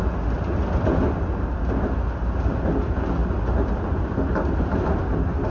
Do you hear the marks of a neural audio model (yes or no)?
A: no